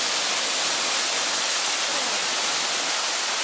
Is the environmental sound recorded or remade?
recorded